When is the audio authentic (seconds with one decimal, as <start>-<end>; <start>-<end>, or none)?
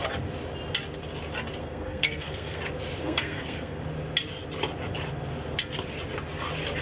0.0-1.6; 2.6-3.0; 3.8-6.8